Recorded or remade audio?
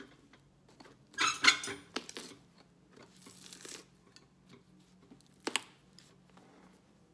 recorded